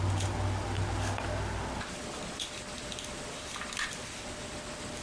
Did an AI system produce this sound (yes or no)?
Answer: yes